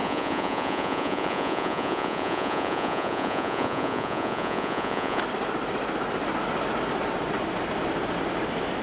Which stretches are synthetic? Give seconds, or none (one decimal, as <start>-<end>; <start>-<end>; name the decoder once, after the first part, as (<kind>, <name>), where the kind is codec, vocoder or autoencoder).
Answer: 0.0-5.2 (vocoder, Vocos)